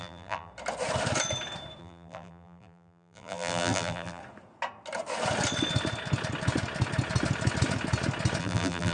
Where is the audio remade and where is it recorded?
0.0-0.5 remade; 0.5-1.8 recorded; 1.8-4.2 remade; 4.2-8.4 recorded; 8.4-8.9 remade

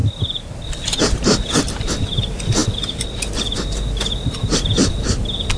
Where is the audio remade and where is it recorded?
0.0-5.6 recorded